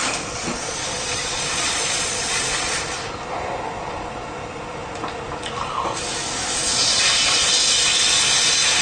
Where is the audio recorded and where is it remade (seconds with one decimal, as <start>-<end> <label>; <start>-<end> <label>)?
0.0-0.4 recorded; 0.4-2.8 remade; 2.8-6.7 recorded; 6.7-7.6 remade; 7.6-8.8 recorded